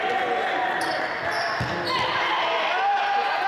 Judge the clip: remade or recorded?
recorded